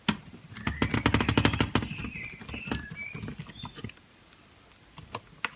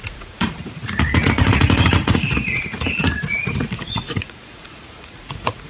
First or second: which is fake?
second